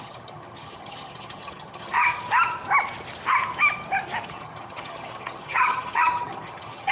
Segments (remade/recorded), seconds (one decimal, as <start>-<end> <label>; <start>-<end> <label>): 0.0-2.1 remade; 2.1-4.3 recorded; 4.3-6.9 remade